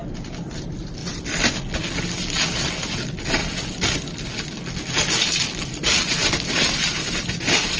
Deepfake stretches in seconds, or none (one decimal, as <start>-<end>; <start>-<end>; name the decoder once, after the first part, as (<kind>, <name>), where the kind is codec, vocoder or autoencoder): 1.0-1.6 (vocoder, BigVGAN v2); 3.4-4.4; 6.2-7.8